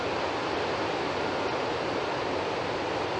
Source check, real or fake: real